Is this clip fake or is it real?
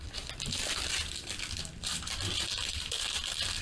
fake